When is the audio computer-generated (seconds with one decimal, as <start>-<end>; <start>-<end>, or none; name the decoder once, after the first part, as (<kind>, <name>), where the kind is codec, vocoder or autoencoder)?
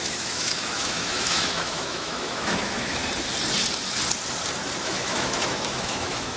0.0-3.0 (autoencoder, DAC-VAE); 4.8-6.4